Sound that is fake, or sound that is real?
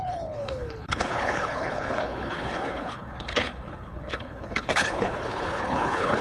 fake